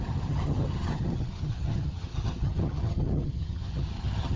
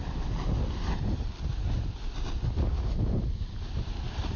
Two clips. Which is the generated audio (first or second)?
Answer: first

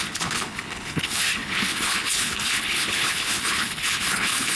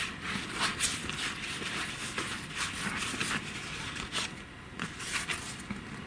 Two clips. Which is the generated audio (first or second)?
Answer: first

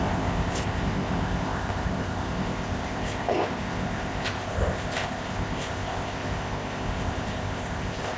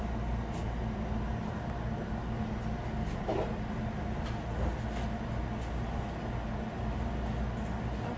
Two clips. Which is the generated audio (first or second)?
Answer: first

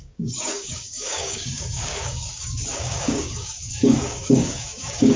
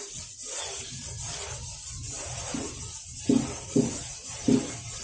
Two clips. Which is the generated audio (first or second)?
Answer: first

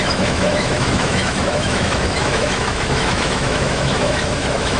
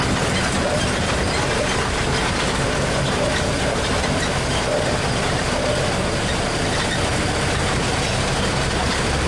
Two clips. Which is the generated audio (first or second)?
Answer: first